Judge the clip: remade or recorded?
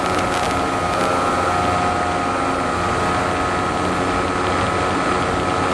recorded